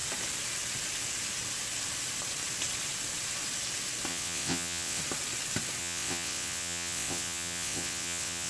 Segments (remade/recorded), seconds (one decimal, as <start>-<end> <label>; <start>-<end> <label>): 0.0-4.1 recorded; 4.1-5.0 remade; 5.0-5.8 recorded; 5.8-8.5 remade

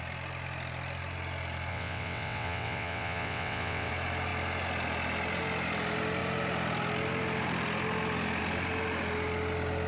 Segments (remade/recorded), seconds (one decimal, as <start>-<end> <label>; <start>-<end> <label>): 0.0-1.7 recorded; 1.7-3.9 remade; 3.9-9.9 recorded

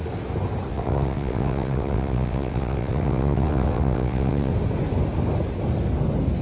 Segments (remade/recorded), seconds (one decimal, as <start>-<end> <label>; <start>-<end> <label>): 0.0-0.7 recorded; 0.7-4.5 remade; 4.5-6.4 recorded

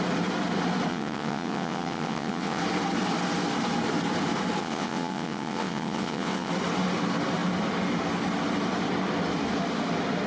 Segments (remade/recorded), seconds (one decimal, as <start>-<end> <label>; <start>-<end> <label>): 0.0-0.9 recorded; 0.9-2.6 remade; 2.6-4.6 recorded; 4.6-6.5 remade; 6.5-10.3 recorded

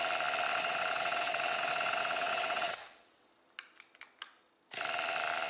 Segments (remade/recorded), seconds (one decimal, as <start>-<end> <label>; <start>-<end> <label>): 0.0-0.5 recorded; 0.5-3.3 remade; 3.3-5.5 recorded

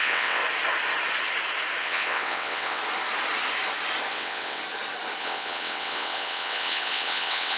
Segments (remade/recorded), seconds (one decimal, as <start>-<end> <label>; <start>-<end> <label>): 0.0-0.4 remade; 0.4-1.8 recorded; 1.8-2.8 remade; 2.8-4.1 recorded; 4.1-4.6 remade; 4.6-5.2 recorded; 5.2-7.6 remade